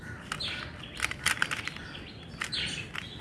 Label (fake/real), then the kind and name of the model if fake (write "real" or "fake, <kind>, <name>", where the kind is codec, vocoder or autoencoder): real